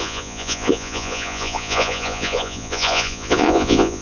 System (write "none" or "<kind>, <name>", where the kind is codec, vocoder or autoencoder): vocoder, Vocos